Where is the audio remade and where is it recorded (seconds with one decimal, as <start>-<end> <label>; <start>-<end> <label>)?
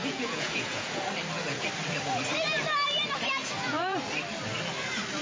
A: 0.0-1.0 remade; 1.0-3.4 recorded; 3.4-4.0 remade; 4.0-5.2 recorded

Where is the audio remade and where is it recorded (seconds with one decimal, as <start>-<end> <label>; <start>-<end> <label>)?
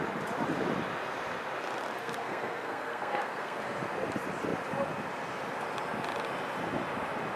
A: 0.0-2.0 recorded; 2.0-3.6 remade; 3.6-7.4 recorded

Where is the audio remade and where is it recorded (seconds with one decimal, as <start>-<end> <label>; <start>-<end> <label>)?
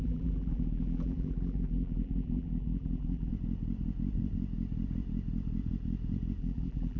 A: 0.0-3.3 remade; 3.3-6.4 recorded; 6.4-7.0 remade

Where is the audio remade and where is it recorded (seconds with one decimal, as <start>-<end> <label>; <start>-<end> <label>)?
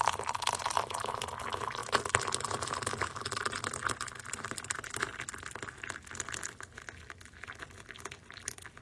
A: 0.0-8.8 recorded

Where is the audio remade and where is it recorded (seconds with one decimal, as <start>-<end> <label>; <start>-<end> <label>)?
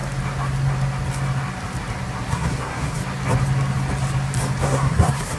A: 0.0-2.3 recorded; 2.3-3.0 remade; 3.0-4.6 recorded; 4.6-5.4 remade